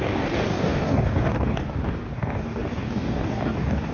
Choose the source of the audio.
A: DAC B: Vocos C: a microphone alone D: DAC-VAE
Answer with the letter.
A